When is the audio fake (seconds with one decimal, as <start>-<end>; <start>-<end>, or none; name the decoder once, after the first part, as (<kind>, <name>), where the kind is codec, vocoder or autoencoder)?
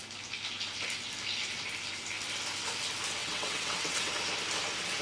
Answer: 3.2-4.1 (vocoder, WaveNeXt)